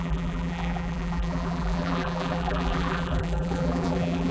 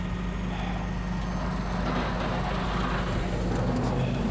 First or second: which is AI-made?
first